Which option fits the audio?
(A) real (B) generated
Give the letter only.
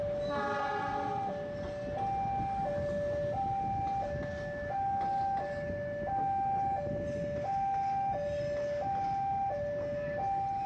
A